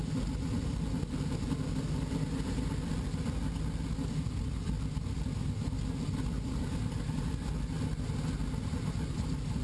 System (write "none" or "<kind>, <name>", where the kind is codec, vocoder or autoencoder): none